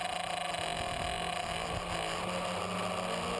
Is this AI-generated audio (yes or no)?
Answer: no